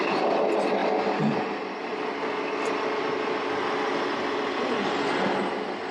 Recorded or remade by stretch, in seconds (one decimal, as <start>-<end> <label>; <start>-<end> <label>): 0.0-5.9 recorded